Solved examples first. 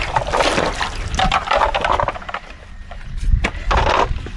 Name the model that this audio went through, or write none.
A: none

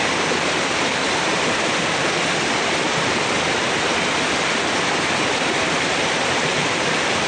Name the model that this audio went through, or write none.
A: vocoder, BigVGAN v2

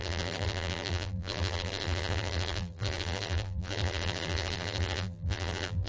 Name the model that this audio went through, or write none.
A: vocoder, BigVGAN v2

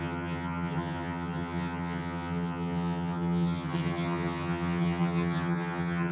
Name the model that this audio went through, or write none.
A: vocoder, HiFi-GAN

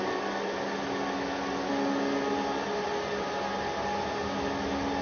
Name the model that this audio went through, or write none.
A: none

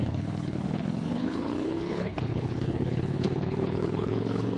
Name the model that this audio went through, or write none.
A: codec, HILCodec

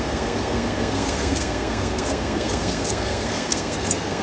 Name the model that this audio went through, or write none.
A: codec, SNAC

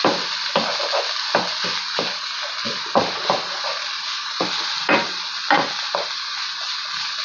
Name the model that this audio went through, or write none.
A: none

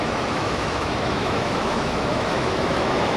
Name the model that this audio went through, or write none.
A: autoencoder, DAC-VAE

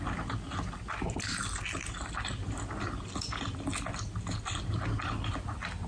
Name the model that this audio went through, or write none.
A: none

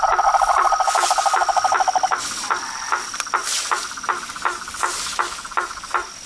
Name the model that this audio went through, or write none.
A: none